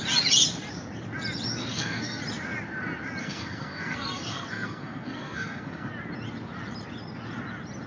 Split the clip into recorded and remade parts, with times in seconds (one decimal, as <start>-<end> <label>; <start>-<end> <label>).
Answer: 0.0-1.6 recorded; 1.6-2.2 remade; 2.2-3.2 recorded; 3.2-5.9 remade; 5.9-7.9 recorded